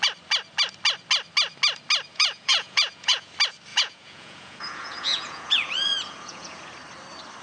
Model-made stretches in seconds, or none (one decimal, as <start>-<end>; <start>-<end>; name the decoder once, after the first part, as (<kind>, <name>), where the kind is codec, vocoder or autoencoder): 2.1-3.3 (vocoder, Vocos); 3.7-6.7